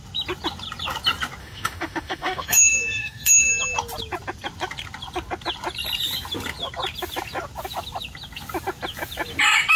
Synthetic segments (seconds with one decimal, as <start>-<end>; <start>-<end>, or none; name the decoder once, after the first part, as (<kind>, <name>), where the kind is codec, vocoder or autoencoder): 1.4-3.5 (autoencoder, DAC-VAE)